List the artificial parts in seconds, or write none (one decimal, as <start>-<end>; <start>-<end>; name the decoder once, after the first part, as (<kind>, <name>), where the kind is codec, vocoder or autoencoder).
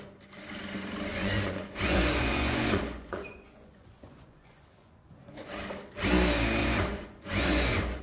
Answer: 1.1-5.5 (vocoder, Vocos); 6.6-8.0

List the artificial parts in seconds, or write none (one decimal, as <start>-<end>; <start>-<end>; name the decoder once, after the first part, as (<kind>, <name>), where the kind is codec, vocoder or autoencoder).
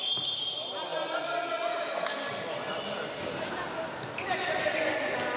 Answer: none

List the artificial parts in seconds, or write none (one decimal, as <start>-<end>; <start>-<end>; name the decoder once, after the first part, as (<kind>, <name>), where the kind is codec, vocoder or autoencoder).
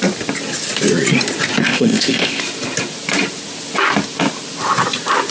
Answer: 1.6-2.4 (codec, ZipCodec)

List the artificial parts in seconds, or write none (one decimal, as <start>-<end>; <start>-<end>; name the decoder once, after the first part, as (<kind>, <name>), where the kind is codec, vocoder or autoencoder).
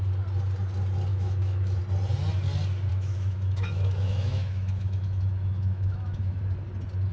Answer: 1.1-1.8 (autoencoder, DAC-VAE); 2.9-6.4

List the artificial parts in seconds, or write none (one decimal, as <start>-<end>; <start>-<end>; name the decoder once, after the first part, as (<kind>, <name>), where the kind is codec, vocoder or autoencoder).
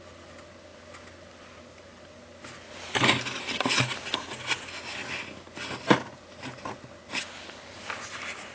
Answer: none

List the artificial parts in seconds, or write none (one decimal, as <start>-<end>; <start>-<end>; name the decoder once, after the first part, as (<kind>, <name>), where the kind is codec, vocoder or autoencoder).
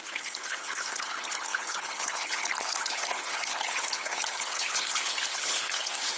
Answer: 0.0-6.2 (codec, HILCodec)